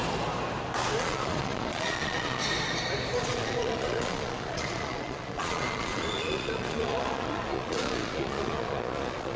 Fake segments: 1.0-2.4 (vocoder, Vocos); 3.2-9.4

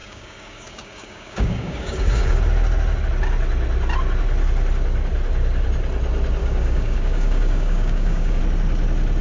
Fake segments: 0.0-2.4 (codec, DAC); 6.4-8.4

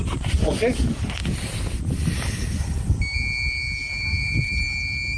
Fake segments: 3.8-4.6 (vocoder, BigVGAN v2)

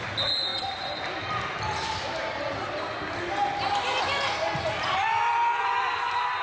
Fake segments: 0.5-1.4 (vocoder, BigVGAN v2)

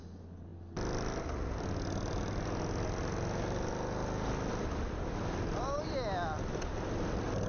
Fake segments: none

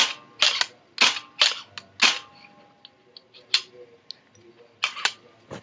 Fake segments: none